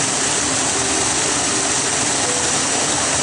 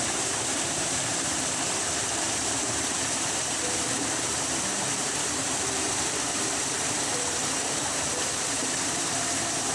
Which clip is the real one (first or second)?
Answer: first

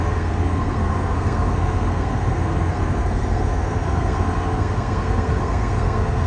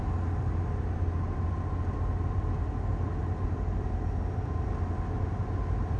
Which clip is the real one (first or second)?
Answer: second